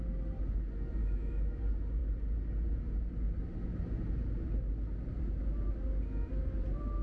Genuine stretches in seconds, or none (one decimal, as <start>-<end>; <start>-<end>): 0.0-1.0; 1.6-7.0